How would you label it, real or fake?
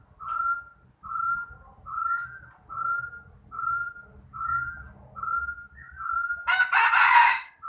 real